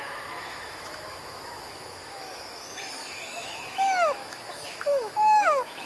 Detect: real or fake fake